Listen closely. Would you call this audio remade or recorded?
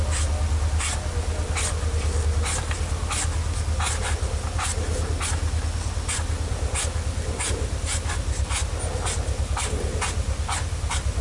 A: recorded